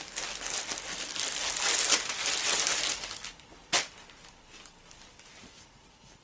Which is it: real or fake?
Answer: real